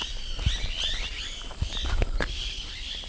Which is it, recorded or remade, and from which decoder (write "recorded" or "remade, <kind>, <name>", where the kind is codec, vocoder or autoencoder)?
recorded